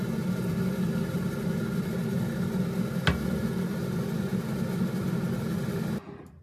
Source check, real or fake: real